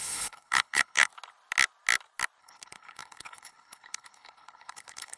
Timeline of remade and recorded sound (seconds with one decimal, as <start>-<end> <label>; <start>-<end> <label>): 0.0-1.1 remade; 1.1-2.4 recorded; 2.4-5.2 remade